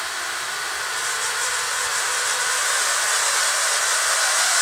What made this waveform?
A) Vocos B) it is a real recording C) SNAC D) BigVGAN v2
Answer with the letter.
B